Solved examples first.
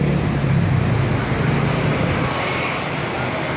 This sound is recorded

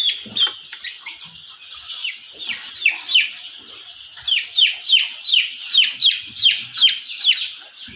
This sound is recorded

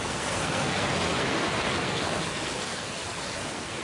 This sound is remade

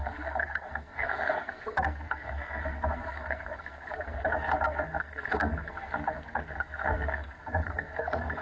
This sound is remade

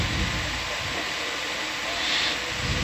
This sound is recorded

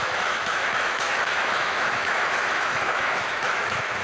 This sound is remade